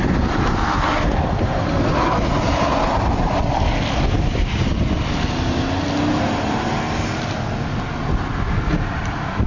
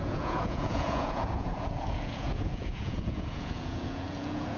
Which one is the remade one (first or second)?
second